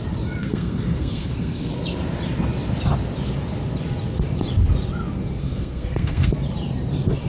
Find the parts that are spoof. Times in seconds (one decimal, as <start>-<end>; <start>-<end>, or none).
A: 0.4-1.7; 5.4-6.3